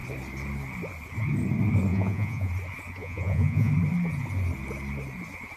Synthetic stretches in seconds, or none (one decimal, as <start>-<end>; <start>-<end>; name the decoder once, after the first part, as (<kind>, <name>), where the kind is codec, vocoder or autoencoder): 1.9-2.5 (vocoder, Vocos); 3.0-3.7